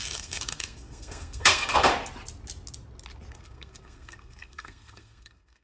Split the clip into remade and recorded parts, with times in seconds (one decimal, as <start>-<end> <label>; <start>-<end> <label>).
0.0-1.9 remade; 1.9-3.3 recorded; 3.3-5.6 remade